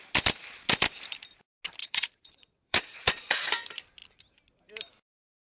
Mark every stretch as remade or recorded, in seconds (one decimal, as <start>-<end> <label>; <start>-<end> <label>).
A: 0.0-1.8 recorded; 1.8-3.5 remade; 3.5-5.4 recorded

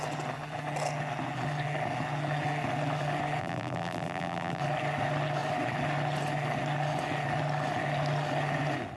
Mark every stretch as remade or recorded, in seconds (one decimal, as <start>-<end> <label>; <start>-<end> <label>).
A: 0.0-3.4 recorded; 3.4-4.6 remade; 4.6-9.0 recorded

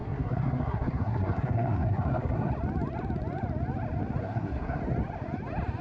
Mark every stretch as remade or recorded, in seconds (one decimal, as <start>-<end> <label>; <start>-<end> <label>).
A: 0.0-2.5 remade; 2.5-4.2 recorded; 4.2-4.8 remade; 4.8-5.8 recorded

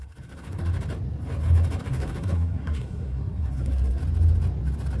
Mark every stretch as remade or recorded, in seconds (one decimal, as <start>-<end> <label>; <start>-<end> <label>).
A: 0.0-0.7 remade; 0.7-1.8 recorded; 1.8-4.0 remade; 4.0-5.0 recorded

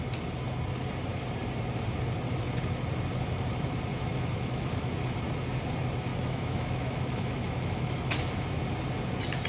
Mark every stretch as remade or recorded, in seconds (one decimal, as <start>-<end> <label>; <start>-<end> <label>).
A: 0.0-3.9 recorded; 3.9-4.9 remade; 4.9-6.1 recorded; 6.1-8.1 remade; 8.1-9.5 recorded